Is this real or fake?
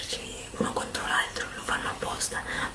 fake